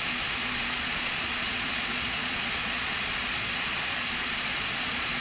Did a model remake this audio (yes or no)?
yes